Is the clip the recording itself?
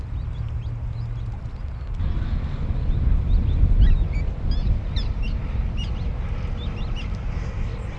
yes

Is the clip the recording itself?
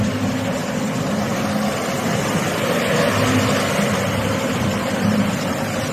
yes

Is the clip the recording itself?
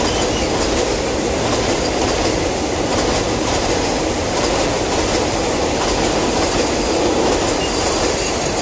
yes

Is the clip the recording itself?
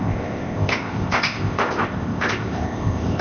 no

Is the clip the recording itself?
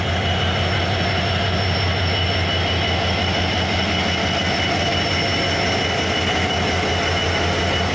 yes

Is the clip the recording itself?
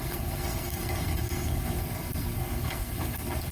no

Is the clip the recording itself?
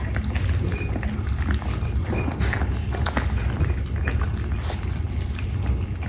yes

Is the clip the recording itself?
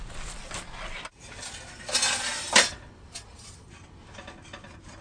yes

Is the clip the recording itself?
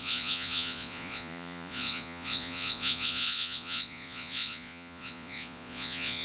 no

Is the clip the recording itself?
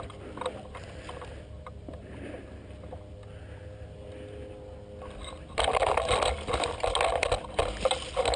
yes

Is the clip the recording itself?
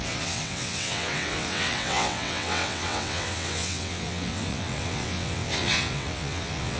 no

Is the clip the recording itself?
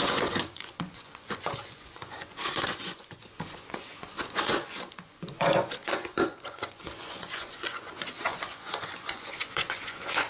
no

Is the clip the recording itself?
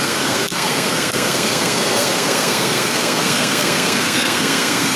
no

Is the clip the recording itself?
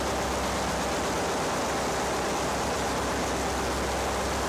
yes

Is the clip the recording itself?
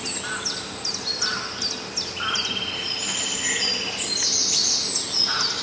yes